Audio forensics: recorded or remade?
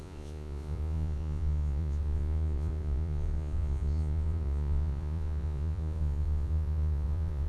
remade